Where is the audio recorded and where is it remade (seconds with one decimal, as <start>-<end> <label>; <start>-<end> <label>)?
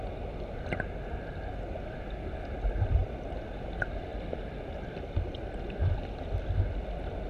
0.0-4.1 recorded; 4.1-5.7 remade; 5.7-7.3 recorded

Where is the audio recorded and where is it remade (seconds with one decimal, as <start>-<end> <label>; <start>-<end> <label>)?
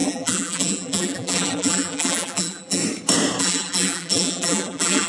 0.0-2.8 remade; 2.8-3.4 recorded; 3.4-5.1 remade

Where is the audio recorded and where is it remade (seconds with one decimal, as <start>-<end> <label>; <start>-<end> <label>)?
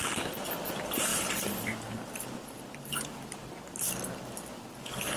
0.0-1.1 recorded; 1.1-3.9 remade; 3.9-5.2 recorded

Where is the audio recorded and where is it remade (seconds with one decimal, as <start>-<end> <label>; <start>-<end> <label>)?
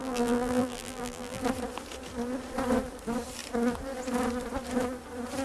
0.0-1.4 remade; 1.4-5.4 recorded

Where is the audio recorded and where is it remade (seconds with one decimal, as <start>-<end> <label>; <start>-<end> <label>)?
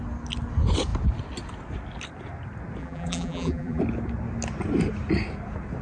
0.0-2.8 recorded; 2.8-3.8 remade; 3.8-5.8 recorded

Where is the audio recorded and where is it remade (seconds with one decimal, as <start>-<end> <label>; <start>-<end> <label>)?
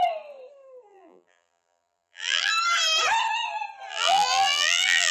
0.0-0.9 recorded; 0.9-2.5 remade; 2.5-3.9 recorded; 3.9-5.1 remade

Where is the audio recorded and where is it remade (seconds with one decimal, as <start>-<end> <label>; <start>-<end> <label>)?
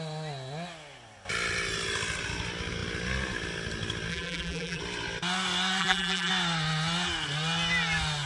0.0-4.1 recorded; 4.1-4.8 remade; 4.8-5.8 recorded; 5.8-6.3 remade; 6.3-8.3 recorded